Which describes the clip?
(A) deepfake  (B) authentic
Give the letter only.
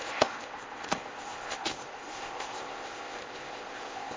A